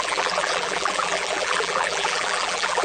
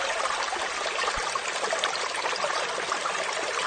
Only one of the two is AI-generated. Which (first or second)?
first